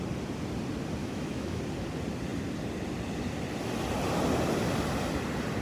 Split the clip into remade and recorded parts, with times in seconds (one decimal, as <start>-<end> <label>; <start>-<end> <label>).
0.0-1.0 recorded; 1.0-1.6 remade; 1.6-5.6 recorded